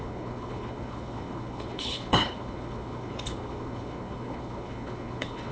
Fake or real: fake